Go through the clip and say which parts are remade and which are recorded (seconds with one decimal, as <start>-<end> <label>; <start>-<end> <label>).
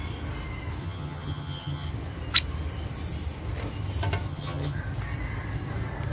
0.0-0.8 recorded; 0.8-1.9 remade; 1.9-4.3 recorded; 4.3-4.8 remade; 4.8-6.1 recorded